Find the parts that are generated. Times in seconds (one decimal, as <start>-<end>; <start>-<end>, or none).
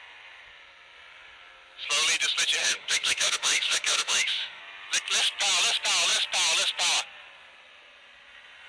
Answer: 2.6-4.6